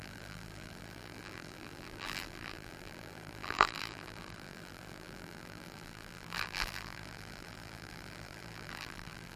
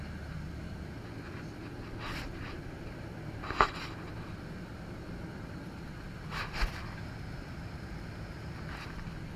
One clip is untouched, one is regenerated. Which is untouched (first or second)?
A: second